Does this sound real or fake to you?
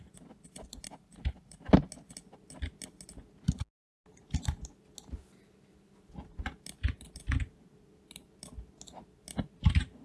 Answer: real